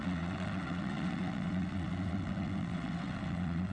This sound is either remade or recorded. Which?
remade